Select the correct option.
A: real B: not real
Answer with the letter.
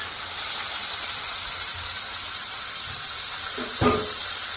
A